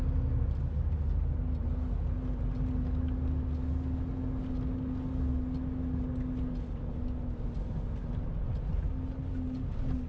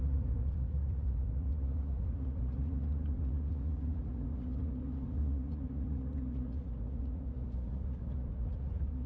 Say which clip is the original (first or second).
first